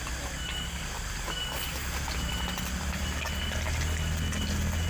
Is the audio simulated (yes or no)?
no